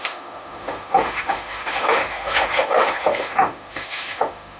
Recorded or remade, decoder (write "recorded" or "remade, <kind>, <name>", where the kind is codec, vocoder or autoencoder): remade, autoencoder, DAC-VAE